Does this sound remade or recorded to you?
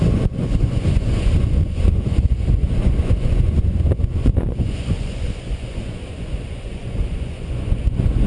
remade